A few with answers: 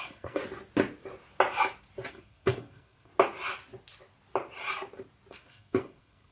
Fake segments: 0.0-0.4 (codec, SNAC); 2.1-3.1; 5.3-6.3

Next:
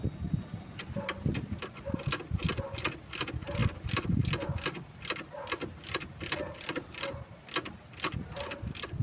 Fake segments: none

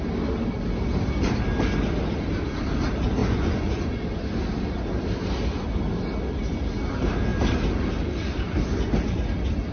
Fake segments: 3.2-3.9 (vocoder, Vocos)

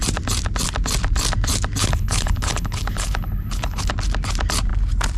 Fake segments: 1.8-3.9 (codec, HILCodec)

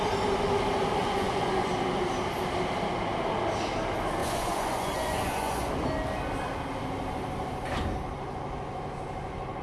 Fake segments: 1.0-1.7 (vocoder, Vocos); 4.2-5.7

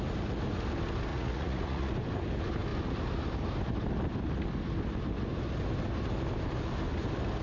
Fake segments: 1.1-1.9 (vocoder, Vocos)

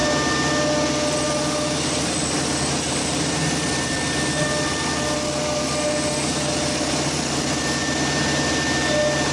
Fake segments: none